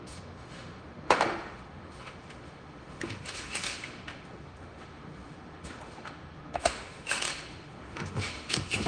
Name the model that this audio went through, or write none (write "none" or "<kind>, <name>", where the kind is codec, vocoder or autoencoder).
autoencoder, DAC-VAE